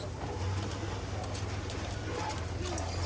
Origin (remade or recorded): recorded